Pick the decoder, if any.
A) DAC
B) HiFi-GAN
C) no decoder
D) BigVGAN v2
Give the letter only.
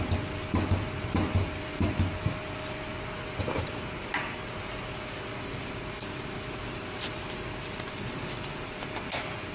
C